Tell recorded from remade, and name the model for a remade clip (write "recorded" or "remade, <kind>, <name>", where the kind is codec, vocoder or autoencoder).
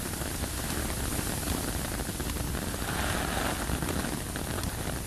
recorded